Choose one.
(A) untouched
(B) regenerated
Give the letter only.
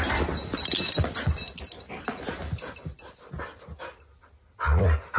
A